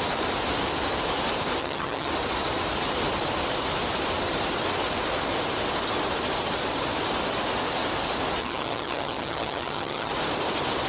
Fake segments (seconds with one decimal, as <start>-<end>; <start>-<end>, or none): 1.6-2.1; 8.4-10.1